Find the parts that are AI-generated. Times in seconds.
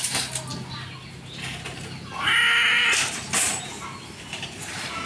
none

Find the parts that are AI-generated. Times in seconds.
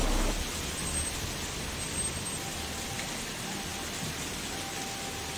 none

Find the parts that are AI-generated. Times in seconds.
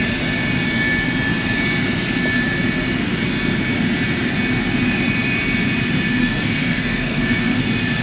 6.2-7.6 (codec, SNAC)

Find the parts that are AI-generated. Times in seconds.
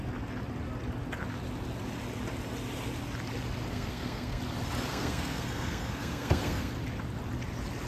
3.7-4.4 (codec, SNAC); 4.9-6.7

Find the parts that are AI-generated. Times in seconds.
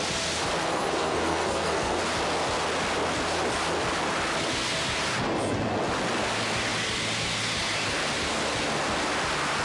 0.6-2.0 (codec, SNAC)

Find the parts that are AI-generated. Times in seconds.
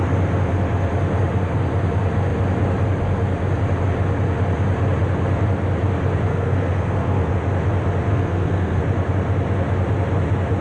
6.3-7.3 (codec, SNAC); 8.1-8.8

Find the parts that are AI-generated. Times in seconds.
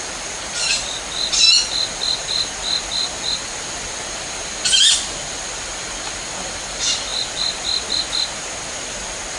none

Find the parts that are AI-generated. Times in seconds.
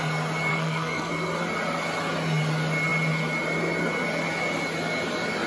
0.5-1.1 (codec, SNAC)